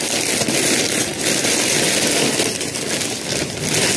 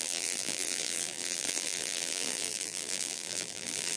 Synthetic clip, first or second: second